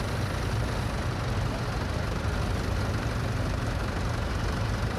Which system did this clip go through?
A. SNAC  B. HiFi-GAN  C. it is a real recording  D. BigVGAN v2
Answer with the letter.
C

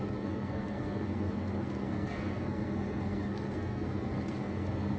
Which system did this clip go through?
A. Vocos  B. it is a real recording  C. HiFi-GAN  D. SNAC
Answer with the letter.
D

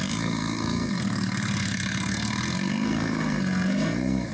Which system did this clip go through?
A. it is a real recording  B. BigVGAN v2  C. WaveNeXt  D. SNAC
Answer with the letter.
D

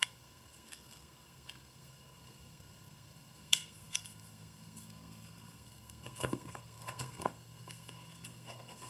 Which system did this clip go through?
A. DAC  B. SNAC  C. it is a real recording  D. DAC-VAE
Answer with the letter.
B